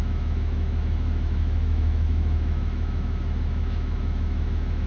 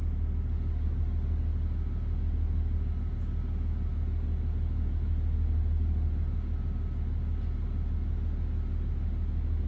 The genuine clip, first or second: second